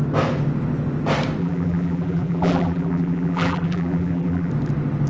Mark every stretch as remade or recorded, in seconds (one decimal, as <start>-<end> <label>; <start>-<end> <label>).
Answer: 0.0-1.4 recorded; 1.4-4.5 remade; 4.5-5.1 recorded